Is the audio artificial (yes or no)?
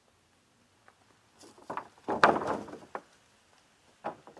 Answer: no